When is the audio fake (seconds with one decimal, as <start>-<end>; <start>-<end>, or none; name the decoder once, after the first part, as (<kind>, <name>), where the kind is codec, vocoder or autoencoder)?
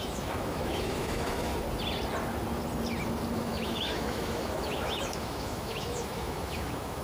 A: 0.0-1.5 (autoencoder, DAC-VAE); 3.3-7.0